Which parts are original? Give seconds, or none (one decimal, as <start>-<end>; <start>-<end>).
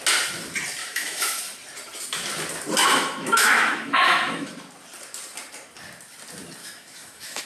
0.0-0.8; 1.4-2.8; 4.5-6.6